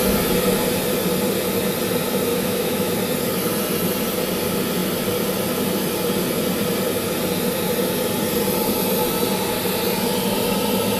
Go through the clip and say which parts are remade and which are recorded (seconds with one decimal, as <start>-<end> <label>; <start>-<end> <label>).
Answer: 0.0-2.3 recorded; 2.3-2.9 remade; 2.9-11.0 recorded